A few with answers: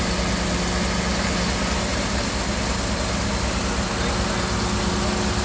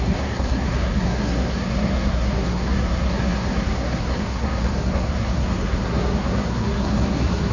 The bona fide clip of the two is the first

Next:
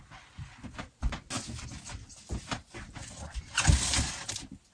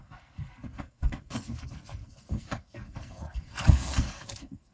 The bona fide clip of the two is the first